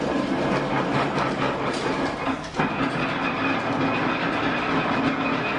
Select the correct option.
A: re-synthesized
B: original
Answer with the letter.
B